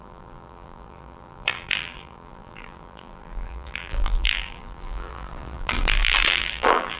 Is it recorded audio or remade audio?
remade